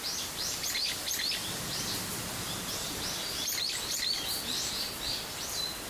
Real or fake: fake